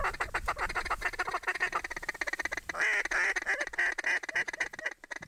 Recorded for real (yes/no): yes